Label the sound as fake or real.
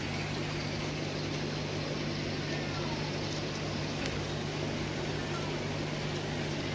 real